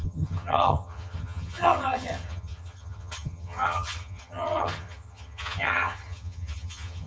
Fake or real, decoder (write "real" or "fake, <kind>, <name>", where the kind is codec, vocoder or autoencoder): fake, vocoder, HiFi-GAN